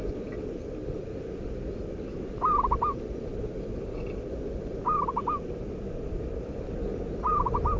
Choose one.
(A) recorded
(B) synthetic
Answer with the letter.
B